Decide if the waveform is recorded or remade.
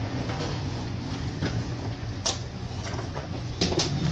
remade